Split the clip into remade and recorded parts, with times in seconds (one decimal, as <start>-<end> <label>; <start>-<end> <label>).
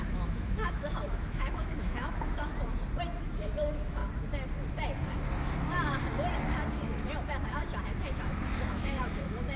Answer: 0.0-2.5 remade; 2.5-3.2 recorded; 3.2-4.0 remade; 4.0-8.3 recorded; 8.3-9.6 remade